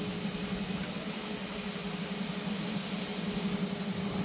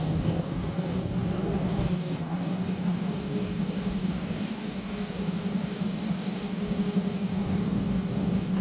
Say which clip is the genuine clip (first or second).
first